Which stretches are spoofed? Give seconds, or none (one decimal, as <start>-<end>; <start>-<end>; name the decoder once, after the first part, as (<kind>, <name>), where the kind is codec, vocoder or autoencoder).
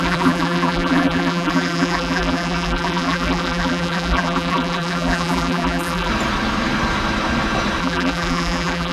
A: 0.0-6.1 (vocoder, BigVGAN v2); 7.8-8.9